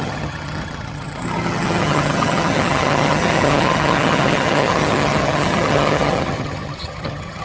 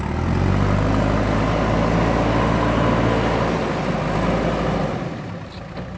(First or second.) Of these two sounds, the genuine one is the second